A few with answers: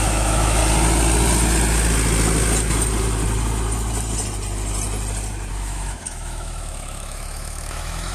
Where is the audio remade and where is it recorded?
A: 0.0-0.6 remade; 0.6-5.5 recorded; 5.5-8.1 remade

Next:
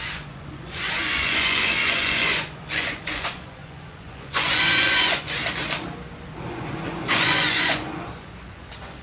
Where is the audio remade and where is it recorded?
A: 0.0-5.4 remade; 5.4-6.4 recorded; 6.4-9.0 remade

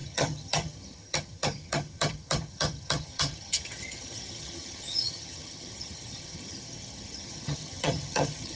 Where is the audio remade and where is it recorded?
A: 0.0-8.6 remade

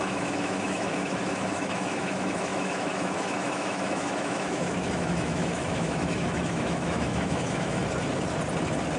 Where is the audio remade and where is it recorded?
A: 0.0-7.8 remade; 7.8-9.0 recorded

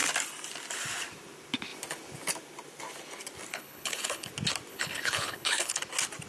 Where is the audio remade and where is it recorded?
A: 0.0-3.5 recorded; 3.5-4.3 remade; 4.3-4.7 recorded; 4.7-5.8 remade; 5.8-6.3 recorded

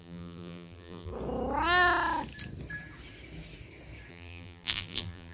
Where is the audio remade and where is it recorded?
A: 0.0-1.1 remade; 1.1-4.1 recorded; 4.1-5.3 remade

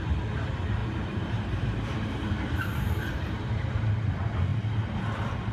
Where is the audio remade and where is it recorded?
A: 0.0-0.8 recorded; 0.8-4.1 remade; 4.1-5.5 recorded

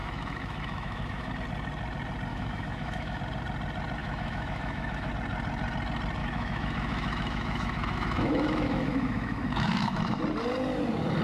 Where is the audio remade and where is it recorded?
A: 0.0-1.3 remade; 1.3-2.3 recorded; 2.3-3.2 remade; 3.2-4.0 recorded; 4.0-5.1 remade; 5.1-6.2 recorded; 6.2-10.2 remade; 10.2-11.2 recorded